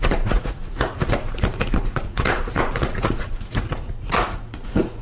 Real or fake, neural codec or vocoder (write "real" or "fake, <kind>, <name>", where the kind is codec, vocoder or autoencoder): fake, vocoder, Vocos